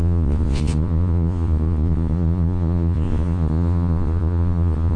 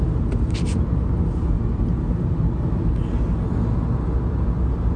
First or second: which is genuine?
second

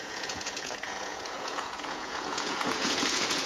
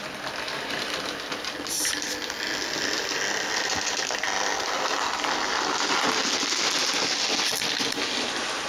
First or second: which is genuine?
second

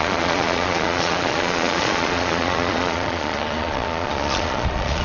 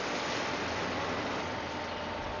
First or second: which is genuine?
second